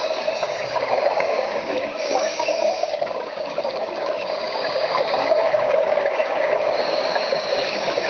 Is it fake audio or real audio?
fake